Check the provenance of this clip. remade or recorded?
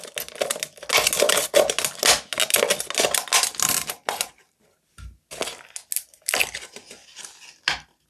recorded